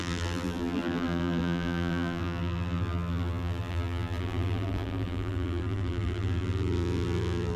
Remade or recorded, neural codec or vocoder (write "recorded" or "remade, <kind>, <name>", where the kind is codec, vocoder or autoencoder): remade, vocoder, BigVGAN v2